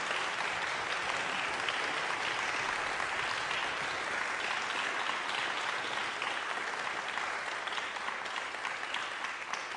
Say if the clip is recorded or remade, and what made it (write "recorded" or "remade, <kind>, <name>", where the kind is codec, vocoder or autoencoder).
recorded